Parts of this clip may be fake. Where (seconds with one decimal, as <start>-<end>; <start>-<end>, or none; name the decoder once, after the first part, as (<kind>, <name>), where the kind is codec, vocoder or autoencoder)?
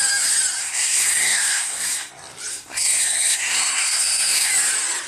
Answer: 0.6-2.1 (codec, SNAC); 2.5-4.5